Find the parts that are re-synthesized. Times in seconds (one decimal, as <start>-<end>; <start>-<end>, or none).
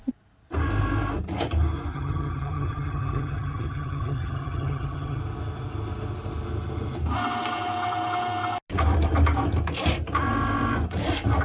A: 1.9-5.2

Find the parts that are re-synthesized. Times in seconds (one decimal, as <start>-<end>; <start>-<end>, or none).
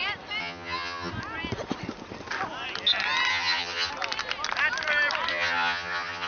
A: 0.4-1.1; 3.3-3.9; 5.3-6.3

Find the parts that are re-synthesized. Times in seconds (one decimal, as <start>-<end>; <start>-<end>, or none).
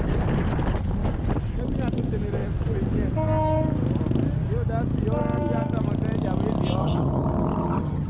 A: 6.8-8.1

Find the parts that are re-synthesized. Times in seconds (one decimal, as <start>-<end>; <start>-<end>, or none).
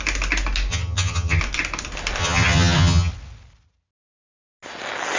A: 0.7-1.4; 2.2-3.1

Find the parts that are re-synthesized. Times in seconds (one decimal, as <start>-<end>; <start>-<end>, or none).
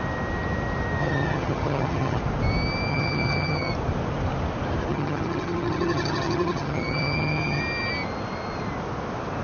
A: 1.0-2.2; 2.9-3.7; 4.9-7.6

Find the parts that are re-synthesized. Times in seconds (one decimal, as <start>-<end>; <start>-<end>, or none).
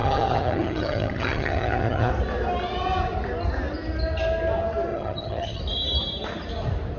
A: 0.0-2.1; 4.9-5.6